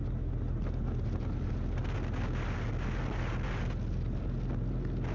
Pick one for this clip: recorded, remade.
recorded